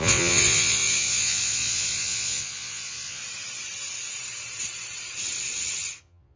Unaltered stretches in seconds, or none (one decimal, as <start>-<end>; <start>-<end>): 3.2-6.0